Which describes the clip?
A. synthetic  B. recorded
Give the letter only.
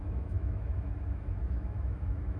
A